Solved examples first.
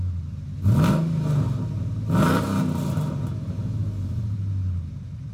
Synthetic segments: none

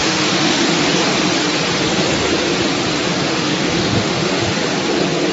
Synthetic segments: 0.0-0.8 (autoencoder, DAC-VAE); 3.3-4.5

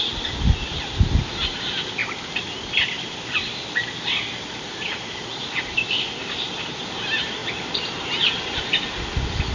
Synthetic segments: 0.0-9.5 (vocoder, BigVGAN v2)